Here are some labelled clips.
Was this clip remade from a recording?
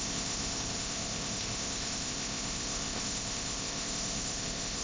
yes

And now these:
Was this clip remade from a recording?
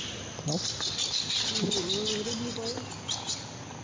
no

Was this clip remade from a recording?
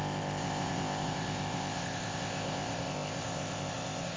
yes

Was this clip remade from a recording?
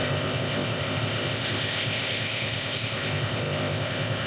yes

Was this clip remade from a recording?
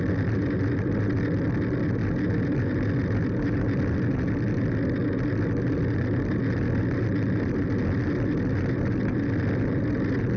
no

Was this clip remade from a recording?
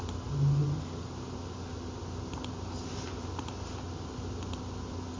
no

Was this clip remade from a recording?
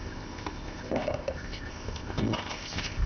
yes